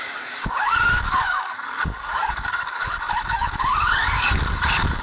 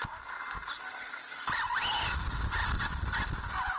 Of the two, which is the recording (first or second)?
second